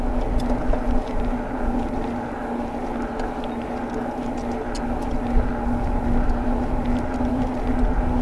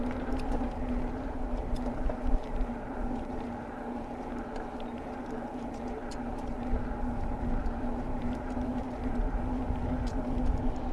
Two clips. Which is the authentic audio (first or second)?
first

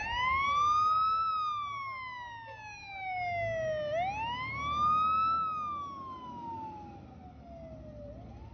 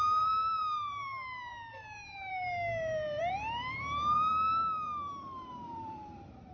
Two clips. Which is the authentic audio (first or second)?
first